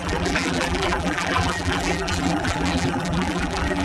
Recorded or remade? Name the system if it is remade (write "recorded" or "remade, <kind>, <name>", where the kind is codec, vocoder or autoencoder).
remade, vocoder, BigVGAN v2